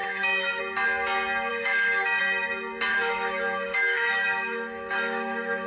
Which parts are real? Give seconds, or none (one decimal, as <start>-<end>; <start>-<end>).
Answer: 0.6-1.5; 2.2-2.9